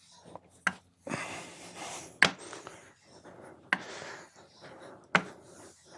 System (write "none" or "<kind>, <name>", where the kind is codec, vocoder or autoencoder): none